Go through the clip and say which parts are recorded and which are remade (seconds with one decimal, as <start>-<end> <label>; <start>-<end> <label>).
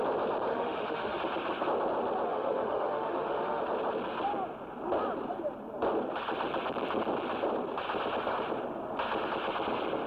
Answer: 0.0-0.5 recorded; 0.5-1.2 remade; 1.2-2.3 recorded; 2.3-3.6 remade; 3.6-10.1 recorded